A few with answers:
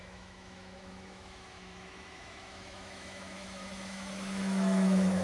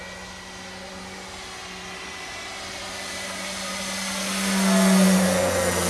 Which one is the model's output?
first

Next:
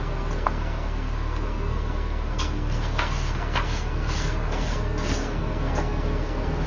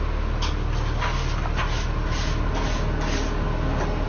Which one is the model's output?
first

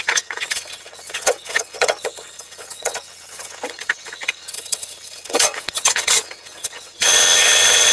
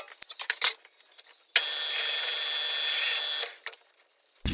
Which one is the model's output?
first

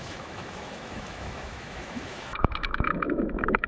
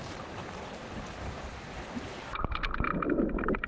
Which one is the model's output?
first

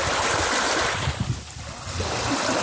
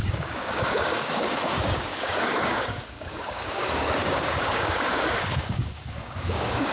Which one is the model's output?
second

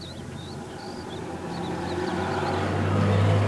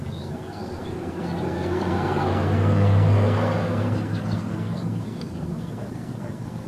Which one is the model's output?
second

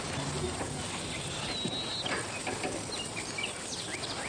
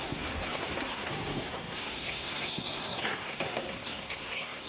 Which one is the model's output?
second